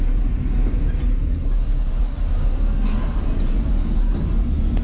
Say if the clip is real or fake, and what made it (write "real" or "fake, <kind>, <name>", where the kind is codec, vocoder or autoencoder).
real